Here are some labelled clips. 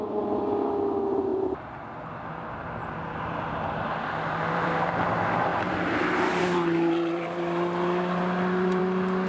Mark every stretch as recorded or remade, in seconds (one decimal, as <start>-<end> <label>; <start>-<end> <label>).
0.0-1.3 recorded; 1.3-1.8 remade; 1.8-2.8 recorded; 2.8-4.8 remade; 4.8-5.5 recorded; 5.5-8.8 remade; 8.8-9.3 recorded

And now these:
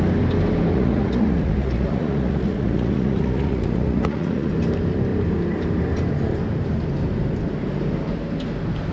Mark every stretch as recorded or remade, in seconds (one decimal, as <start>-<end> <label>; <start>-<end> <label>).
0.0-0.7 recorded; 0.7-4.5 remade; 4.5-8.9 recorded

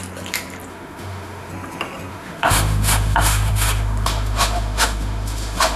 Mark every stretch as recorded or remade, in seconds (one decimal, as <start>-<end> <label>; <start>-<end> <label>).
0.0-0.7 recorded; 0.7-1.5 remade; 1.5-2.1 recorded; 2.1-5.8 remade

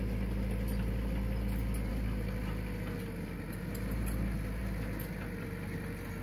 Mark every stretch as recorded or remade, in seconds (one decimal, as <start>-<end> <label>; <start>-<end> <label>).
0.0-6.2 recorded